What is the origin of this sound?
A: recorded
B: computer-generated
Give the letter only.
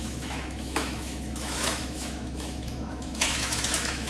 B